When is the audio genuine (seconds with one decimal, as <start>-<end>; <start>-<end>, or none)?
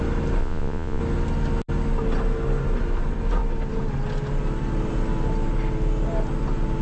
0.0-0.4; 1.0-6.8